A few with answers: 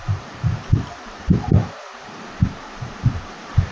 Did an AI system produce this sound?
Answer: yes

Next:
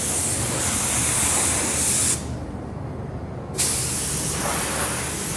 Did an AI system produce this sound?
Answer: no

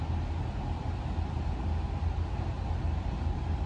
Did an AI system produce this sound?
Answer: no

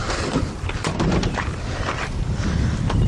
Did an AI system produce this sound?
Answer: yes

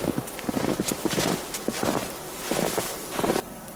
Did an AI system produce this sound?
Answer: no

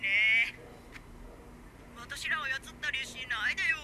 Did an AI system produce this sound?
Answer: no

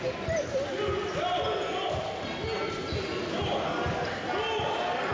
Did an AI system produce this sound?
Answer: no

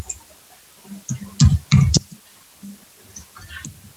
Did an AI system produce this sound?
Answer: no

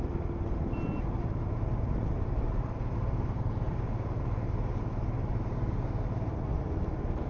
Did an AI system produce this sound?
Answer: no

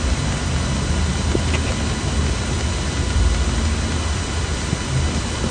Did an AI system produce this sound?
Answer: no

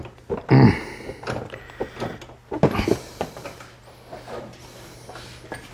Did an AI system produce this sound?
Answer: no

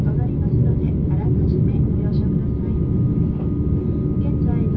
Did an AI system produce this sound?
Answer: no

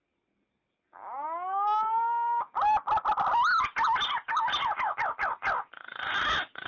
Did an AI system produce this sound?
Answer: no